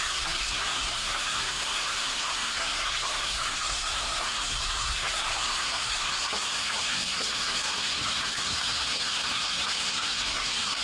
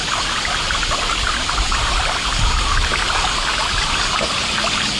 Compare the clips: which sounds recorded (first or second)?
second